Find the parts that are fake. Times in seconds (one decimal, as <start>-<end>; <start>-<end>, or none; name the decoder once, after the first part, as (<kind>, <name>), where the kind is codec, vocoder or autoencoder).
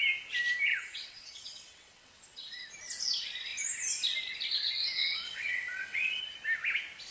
0.7-2.7 (vocoder, WaveNeXt); 4.8-6.2